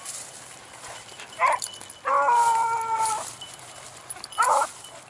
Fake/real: fake